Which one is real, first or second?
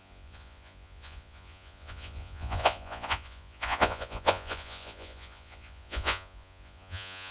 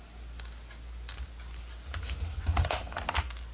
second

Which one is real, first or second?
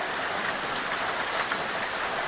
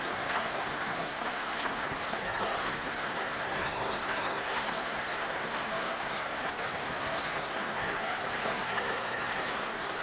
first